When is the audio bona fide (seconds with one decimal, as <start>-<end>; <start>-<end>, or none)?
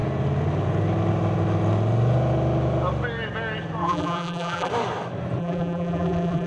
0.0-3.8; 4.7-5.4